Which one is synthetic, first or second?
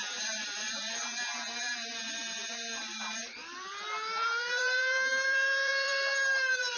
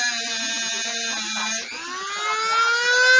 first